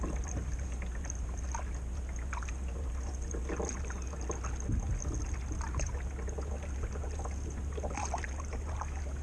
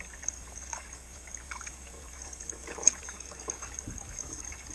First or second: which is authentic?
first